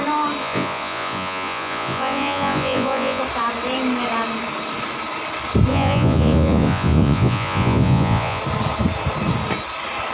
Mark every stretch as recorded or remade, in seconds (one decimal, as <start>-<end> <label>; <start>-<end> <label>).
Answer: 0.0-0.4 recorded; 0.4-3.2 remade; 3.2-5.7 recorded; 5.7-8.4 remade; 8.4-10.1 recorded